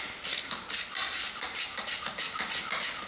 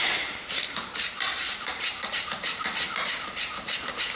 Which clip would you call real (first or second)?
first